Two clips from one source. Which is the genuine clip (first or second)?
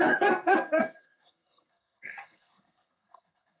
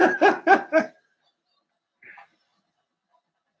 second